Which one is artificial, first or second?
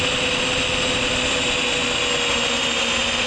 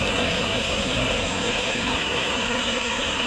second